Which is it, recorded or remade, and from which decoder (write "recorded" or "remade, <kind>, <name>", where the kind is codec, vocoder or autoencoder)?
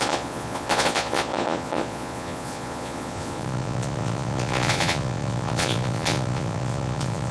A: remade, vocoder, Vocos